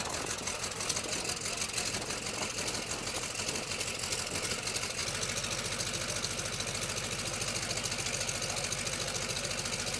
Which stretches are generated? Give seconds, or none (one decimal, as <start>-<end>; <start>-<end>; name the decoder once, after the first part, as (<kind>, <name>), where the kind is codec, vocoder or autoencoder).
none

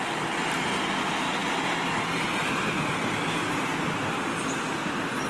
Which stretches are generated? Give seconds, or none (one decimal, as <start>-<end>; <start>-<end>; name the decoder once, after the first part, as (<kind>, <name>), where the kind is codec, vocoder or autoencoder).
none

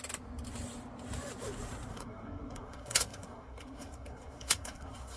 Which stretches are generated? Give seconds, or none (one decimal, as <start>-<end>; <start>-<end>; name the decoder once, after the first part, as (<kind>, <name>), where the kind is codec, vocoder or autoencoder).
1.9-5.2 (codec, SNAC)

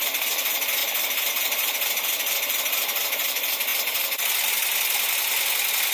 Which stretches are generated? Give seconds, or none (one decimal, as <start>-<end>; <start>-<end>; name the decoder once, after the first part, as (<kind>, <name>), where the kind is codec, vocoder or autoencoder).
none